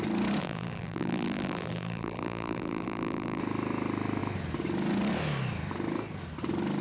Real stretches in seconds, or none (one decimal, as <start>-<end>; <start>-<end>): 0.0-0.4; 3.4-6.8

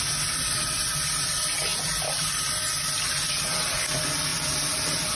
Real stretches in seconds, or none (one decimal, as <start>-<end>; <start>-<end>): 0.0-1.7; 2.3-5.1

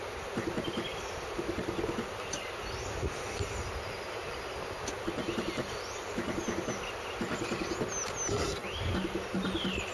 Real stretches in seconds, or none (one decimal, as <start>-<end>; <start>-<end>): 0.0-0.9; 2.0-9.9

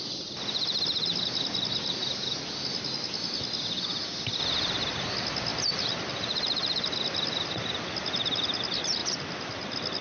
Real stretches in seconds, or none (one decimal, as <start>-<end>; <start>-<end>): 0.0-10.0

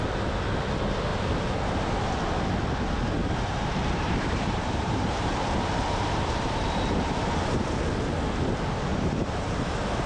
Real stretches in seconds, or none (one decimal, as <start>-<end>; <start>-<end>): 0.0-1.1; 2.1-3.2; 7.2-8.9